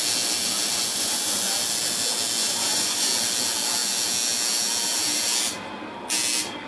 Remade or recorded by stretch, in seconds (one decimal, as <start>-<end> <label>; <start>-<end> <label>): 0.0-0.9 recorded; 0.9-1.4 remade; 1.4-2.4 recorded; 2.4-3.1 remade; 3.1-6.7 recorded